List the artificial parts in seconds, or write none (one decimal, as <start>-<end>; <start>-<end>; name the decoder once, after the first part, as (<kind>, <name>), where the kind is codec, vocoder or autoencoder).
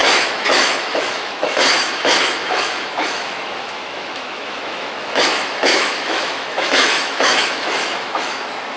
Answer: 0.0-8.8 (autoencoder, DAC-VAE)